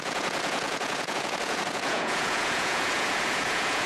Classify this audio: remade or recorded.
remade